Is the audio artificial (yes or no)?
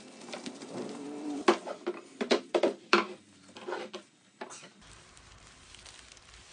yes